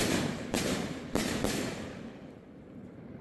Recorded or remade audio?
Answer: remade